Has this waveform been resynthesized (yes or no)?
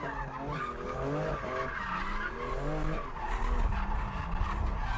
no